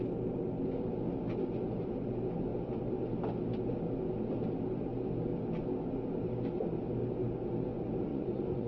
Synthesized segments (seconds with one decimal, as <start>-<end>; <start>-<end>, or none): 8.1-8.7